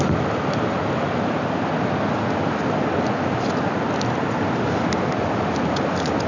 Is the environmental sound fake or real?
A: real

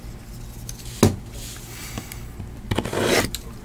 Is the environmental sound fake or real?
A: real